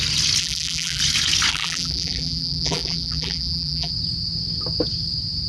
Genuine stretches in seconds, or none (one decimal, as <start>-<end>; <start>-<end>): 0.0-0.4; 1.0-1.5; 3.9-5.5